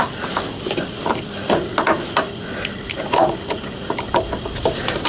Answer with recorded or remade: recorded